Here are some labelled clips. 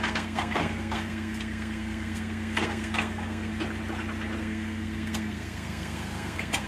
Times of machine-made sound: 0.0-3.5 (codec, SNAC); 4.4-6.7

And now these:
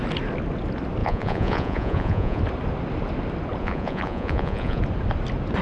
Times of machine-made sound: 1.0-2.4 (vocoder, Vocos); 3.6-4.8

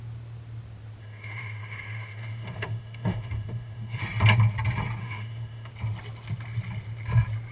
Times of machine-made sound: 1.0-4.0 (autoencoder, DAC-VAE); 5.0-5.7

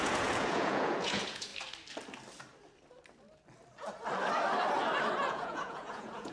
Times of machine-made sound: 0.0-1.5 (vocoder, Vocos); 5.3-6.3

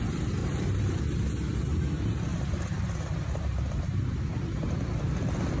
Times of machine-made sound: 0.4-1.0 (vocoder, BigVGAN v2); 2.3-4.8

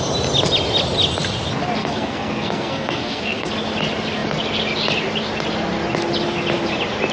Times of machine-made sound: 1.8-3.5 (codec, SNAC)

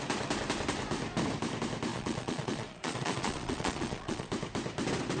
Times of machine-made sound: 1.9-4.3 (vocoder, Vocos)